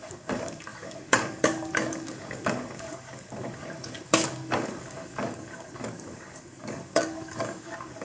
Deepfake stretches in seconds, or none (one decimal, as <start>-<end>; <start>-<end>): 0.0-8.0